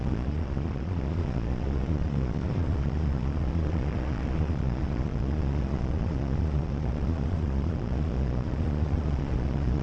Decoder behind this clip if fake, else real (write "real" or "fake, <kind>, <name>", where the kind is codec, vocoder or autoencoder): fake, vocoder, Vocos